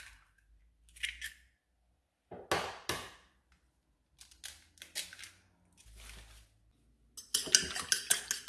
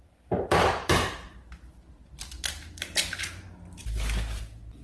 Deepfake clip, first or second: second